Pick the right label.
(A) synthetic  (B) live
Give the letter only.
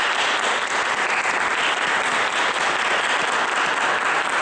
B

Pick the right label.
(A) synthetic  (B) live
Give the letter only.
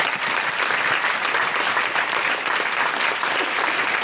B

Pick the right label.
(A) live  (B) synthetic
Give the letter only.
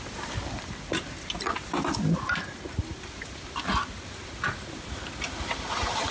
A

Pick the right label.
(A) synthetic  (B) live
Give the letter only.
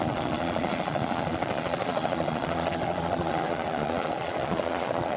A